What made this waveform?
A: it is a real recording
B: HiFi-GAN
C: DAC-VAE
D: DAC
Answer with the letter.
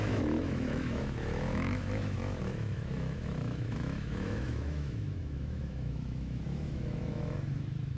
C